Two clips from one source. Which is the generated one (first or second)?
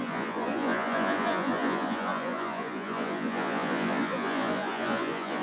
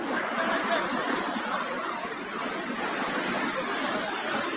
first